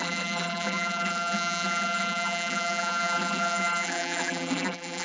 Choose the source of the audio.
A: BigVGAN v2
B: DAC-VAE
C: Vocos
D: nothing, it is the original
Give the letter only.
A